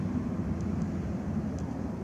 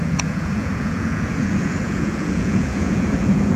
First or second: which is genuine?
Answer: first